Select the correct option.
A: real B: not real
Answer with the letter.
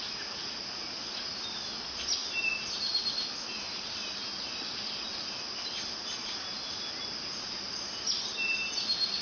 A